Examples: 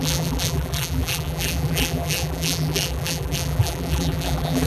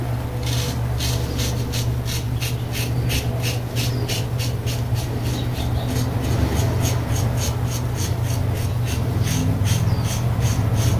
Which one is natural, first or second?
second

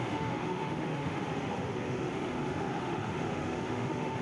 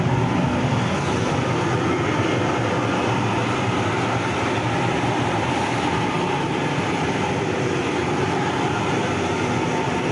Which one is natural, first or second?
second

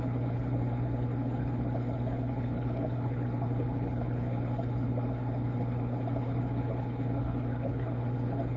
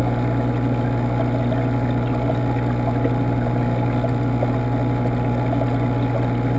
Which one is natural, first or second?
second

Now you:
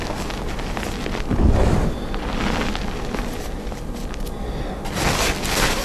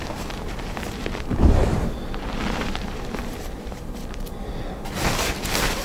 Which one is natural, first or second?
first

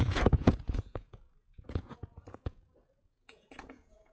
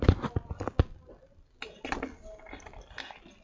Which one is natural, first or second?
second